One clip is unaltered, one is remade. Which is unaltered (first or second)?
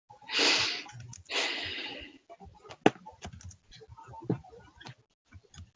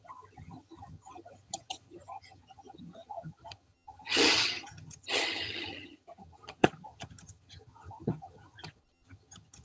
first